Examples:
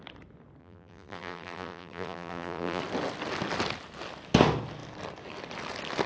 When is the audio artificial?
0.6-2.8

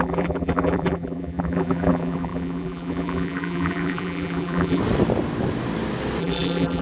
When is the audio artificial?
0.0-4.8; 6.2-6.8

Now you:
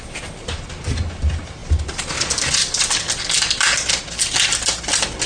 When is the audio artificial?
none

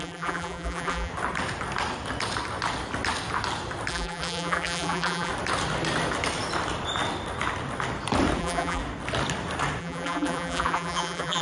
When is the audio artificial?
0.0-1.1; 3.9-5.3; 8.4-8.8; 9.8-11.4